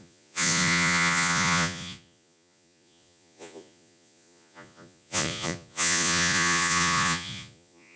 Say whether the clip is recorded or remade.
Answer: remade